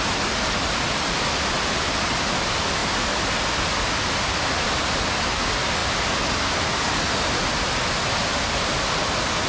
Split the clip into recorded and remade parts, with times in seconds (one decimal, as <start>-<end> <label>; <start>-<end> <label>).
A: 0.0-9.5 recorded